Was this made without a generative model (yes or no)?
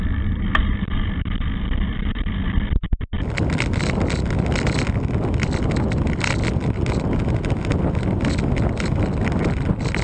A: yes